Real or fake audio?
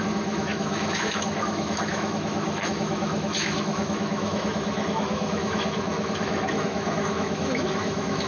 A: fake